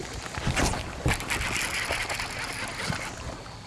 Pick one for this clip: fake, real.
real